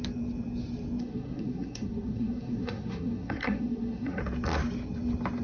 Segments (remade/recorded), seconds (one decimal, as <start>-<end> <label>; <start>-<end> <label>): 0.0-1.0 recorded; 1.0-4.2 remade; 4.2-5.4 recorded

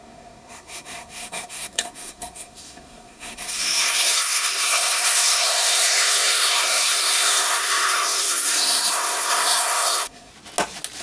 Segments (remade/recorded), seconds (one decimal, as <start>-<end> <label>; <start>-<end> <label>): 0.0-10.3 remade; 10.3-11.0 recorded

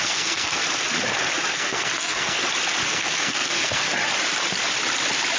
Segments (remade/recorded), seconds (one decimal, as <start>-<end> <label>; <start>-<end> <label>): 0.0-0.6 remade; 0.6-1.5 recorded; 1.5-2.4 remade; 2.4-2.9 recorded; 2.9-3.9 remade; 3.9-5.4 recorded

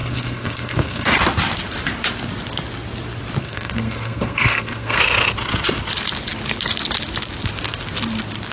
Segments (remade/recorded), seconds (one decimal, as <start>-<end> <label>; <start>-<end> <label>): 0.0-1.1 remade; 1.1-3.4 recorded; 3.4-5.0 remade; 5.0-8.5 recorded